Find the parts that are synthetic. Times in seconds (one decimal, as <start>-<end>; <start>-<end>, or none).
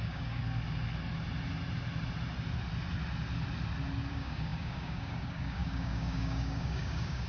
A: 0.0-0.4; 4.1-7.3